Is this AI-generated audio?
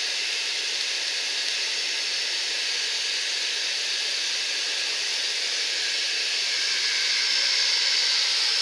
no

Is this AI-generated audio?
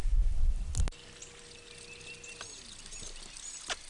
no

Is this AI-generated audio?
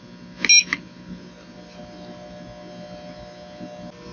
no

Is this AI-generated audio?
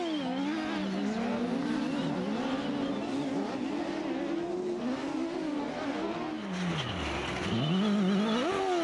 no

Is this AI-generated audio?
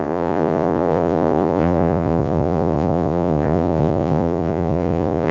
yes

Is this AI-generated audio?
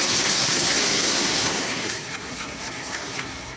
yes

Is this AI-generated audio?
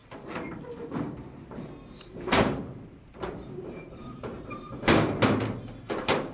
yes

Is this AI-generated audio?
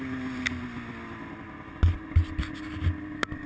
no